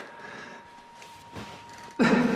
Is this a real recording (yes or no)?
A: no